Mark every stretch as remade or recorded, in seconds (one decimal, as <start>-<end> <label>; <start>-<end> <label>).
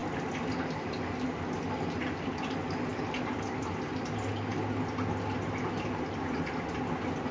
0.0-7.3 recorded